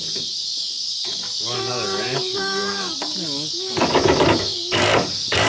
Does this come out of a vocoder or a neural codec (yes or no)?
yes